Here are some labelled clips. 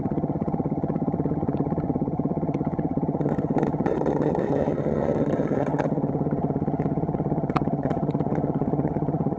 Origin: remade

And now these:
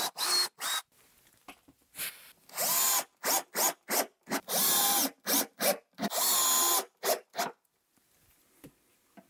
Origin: recorded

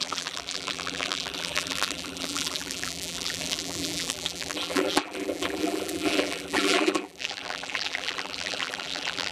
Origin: remade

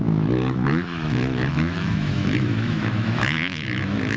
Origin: remade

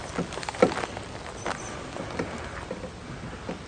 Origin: recorded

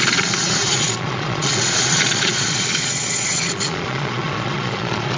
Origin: remade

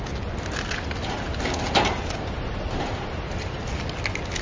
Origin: recorded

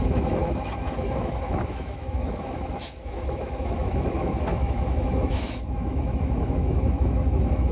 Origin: remade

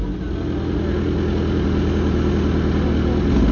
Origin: recorded